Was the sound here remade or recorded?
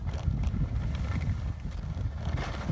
recorded